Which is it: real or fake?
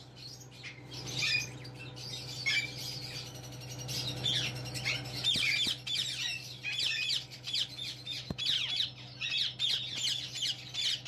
real